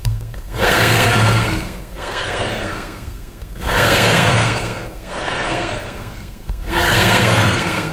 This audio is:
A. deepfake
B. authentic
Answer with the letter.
A